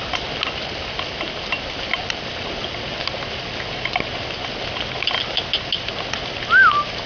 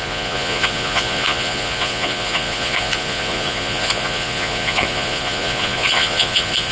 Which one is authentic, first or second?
first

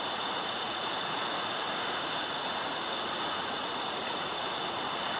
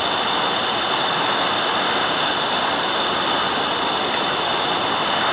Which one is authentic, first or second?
second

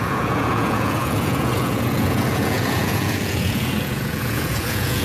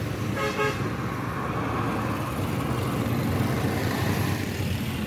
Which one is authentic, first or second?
second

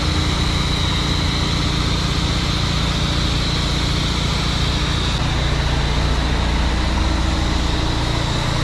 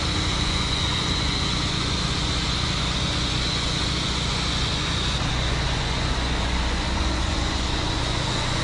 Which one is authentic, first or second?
first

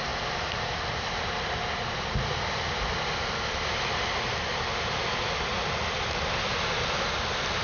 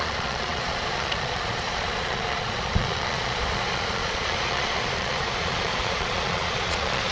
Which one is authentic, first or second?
first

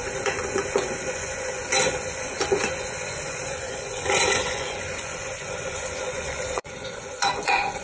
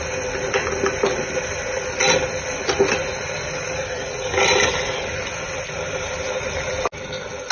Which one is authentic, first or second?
second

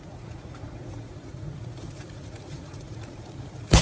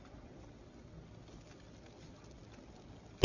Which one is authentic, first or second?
second